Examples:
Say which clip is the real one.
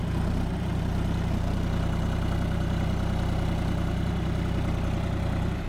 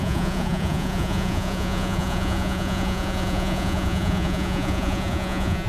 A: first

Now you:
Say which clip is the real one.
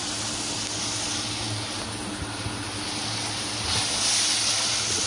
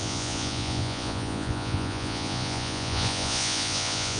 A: first